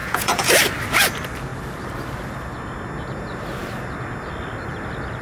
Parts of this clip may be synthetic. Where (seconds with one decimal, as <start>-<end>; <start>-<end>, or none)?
0.0-0.5